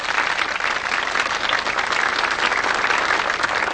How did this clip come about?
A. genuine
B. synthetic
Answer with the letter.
A